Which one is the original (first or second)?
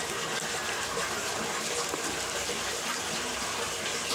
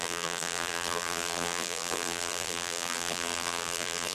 first